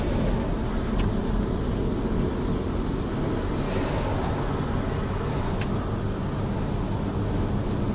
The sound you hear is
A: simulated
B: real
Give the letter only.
B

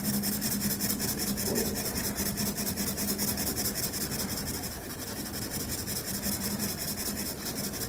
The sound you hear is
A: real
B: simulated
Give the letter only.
A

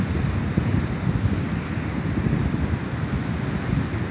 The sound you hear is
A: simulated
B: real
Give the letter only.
B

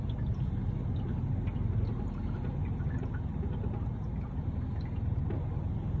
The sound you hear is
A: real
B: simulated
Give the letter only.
A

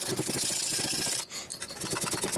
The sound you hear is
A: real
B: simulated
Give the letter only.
A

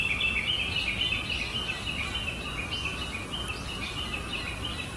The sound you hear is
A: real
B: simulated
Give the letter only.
A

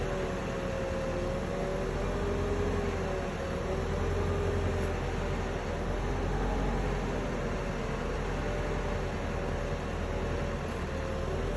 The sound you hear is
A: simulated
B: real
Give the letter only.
B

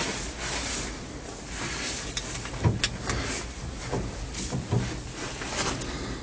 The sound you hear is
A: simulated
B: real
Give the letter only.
B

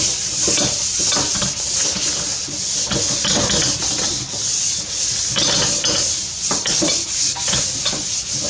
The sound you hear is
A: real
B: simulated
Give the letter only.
A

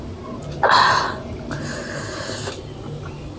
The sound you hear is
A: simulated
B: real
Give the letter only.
B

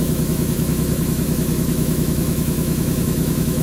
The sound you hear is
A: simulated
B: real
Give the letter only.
A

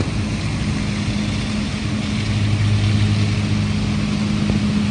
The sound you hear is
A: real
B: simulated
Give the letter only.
A